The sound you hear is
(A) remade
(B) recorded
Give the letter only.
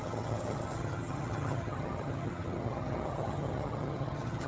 A